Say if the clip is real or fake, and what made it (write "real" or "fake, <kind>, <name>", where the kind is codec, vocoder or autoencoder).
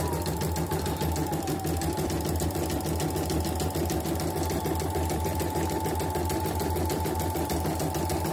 real